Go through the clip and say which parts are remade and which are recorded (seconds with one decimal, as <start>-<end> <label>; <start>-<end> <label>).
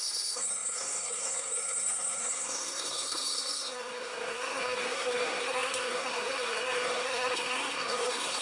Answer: 0.0-8.4 remade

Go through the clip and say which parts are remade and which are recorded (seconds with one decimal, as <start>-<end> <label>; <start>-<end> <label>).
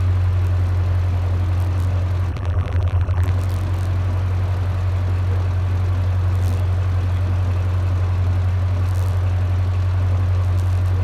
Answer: 0.0-2.3 recorded; 2.3-3.3 remade; 3.3-11.0 recorded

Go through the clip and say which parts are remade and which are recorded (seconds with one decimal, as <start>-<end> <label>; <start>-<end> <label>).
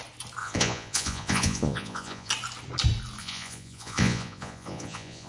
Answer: 0.0-0.4 recorded; 0.4-2.3 remade; 2.3-3.2 recorded; 3.2-5.3 remade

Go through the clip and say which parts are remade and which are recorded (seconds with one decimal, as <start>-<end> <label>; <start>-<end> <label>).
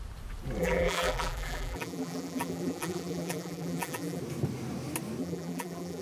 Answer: 0.0-0.6 recorded; 0.6-4.2 remade; 4.2-5.2 recorded; 5.2-6.0 remade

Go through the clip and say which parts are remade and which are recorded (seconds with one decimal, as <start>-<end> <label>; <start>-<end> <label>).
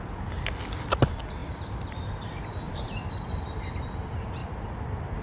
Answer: 0.0-5.2 recorded